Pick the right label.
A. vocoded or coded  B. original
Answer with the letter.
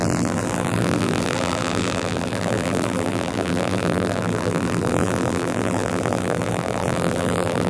A